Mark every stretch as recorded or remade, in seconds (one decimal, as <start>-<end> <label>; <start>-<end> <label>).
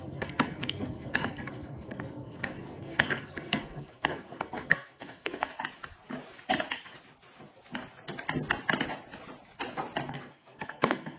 0.0-5.5 remade; 5.5-10.1 recorded; 10.1-11.2 remade